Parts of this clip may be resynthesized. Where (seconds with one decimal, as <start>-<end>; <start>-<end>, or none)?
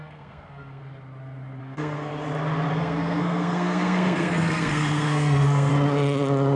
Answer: 0.0-0.8; 1.6-2.1; 2.7-5.7